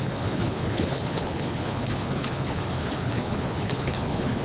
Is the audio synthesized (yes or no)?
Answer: yes